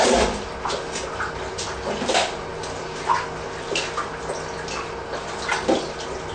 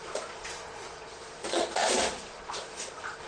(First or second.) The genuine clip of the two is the first